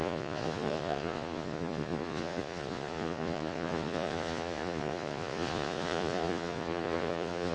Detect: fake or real fake